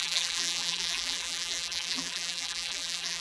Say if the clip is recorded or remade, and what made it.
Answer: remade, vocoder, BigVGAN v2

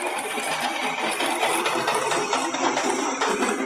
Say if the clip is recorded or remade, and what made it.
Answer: recorded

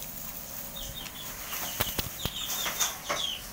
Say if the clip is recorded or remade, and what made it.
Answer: recorded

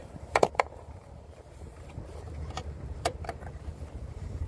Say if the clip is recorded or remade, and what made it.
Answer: remade, vocoder, BigVGAN v2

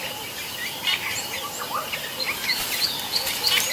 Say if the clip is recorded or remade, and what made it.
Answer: recorded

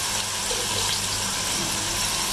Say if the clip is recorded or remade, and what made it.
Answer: recorded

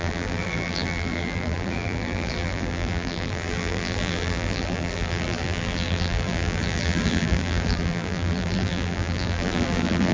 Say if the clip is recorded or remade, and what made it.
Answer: remade, vocoder, BigVGAN v2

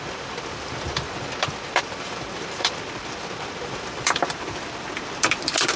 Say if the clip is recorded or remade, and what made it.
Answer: remade, vocoder, BigVGAN v2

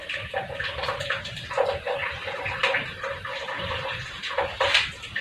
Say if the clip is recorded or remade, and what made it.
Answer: remade, vocoder, BigVGAN v2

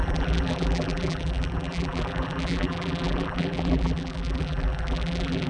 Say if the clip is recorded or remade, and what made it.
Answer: remade, vocoder, BigVGAN v2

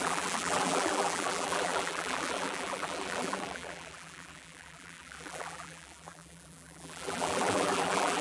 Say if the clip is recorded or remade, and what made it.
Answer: remade, vocoder, BigVGAN v2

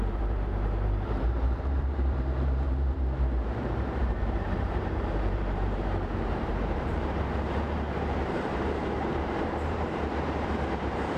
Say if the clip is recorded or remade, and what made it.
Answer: remade, vocoder, BigVGAN v2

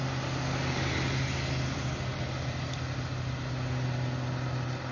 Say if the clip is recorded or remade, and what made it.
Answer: recorded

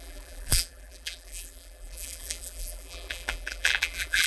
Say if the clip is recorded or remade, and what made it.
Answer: remade, vocoder, BigVGAN v2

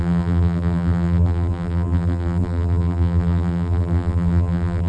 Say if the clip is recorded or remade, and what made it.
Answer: remade, vocoder, BigVGAN v2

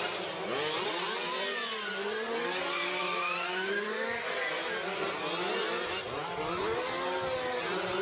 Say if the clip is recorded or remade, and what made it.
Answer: recorded